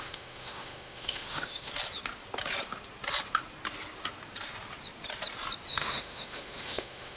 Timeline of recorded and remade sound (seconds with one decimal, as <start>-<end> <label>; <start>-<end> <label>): 0.0-1.7 remade; 1.7-5.7 recorded; 5.7-7.2 remade